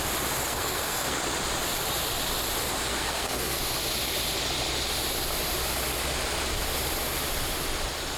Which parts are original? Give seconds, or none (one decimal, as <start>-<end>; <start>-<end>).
0.0-0.4; 1.2-2.9; 3.6-8.2